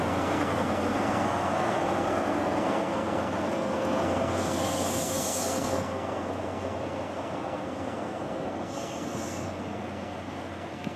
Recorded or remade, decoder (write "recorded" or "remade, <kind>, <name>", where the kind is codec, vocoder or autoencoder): remade, codec, SNAC